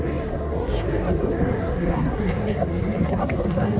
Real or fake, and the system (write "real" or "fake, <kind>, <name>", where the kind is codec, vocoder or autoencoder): fake, codec, SNAC